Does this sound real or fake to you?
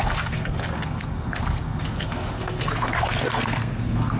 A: fake